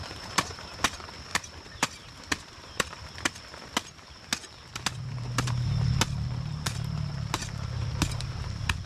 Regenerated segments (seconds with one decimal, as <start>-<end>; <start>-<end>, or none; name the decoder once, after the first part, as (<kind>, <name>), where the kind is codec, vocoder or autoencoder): 1.3-3.0 (vocoder, BigVGAN v2)